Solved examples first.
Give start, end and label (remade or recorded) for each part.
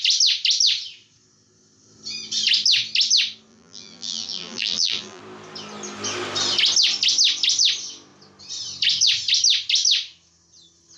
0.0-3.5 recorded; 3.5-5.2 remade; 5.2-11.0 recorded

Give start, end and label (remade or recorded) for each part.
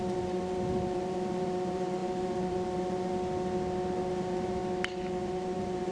0.0-3.1 remade; 3.1-4.1 recorded; 4.1-4.6 remade; 4.6-5.1 recorded; 5.1-5.9 remade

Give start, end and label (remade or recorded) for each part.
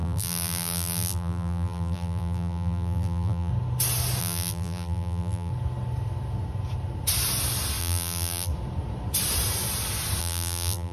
0.0-3.5 remade; 3.5-4.2 recorded; 4.2-5.5 remade; 5.5-7.8 recorded; 7.8-8.5 remade; 8.5-10.2 recorded; 10.2-10.9 remade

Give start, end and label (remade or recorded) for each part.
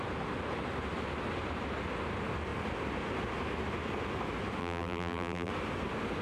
0.0-4.6 recorded; 4.6-5.5 remade; 5.5-6.2 recorded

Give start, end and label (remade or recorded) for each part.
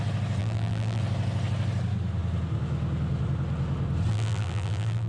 0.0-0.4 recorded; 0.4-1.0 remade; 1.0-4.1 recorded; 4.1-5.1 remade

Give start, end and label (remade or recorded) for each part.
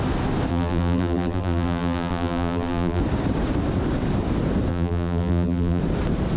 0.0-0.5 recorded; 0.5-3.0 remade; 3.0-4.7 recorded; 4.7-5.8 remade; 5.8-6.4 recorded